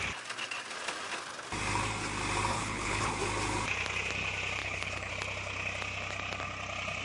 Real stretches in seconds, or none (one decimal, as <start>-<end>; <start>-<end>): 0.0-2.5; 3.1-4.6; 5.1-7.0